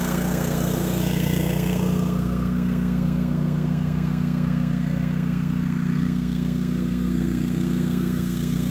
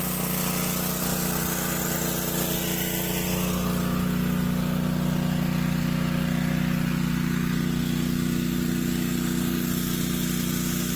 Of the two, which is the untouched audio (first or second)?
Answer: second